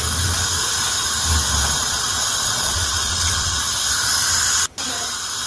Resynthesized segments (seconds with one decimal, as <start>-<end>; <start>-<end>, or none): 1.8-3.6